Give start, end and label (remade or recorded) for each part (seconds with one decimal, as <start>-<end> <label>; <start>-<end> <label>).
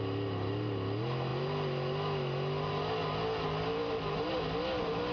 0.0-5.1 recorded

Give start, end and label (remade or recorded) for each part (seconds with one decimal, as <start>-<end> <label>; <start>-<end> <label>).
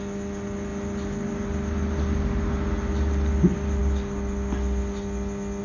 0.0-5.6 recorded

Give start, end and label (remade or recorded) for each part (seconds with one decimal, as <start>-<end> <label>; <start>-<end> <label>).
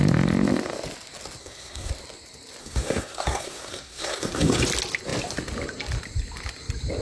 0.0-1.4 recorded; 1.4-1.9 remade; 1.9-2.6 recorded; 2.6-4.6 remade; 4.6-7.0 recorded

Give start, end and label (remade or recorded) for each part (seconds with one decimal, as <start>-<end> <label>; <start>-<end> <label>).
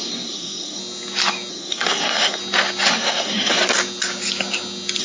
0.0-0.8 remade; 0.8-1.5 recorded; 1.5-2.4 remade; 2.4-2.9 recorded; 2.9-3.6 remade; 3.6-5.0 recorded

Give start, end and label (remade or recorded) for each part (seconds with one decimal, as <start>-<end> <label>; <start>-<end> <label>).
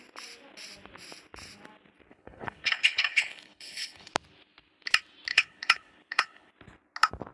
0.0-2.1 recorded; 2.1-4.1 remade; 4.1-5.3 recorded; 5.3-6.5 remade; 6.5-7.3 recorded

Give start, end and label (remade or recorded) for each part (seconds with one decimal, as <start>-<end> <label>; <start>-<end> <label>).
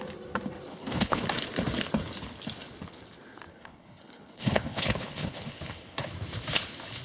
0.0-0.7 recorded; 0.7-1.2 remade; 1.2-3.5 recorded; 3.5-6.1 remade; 6.1-7.0 recorded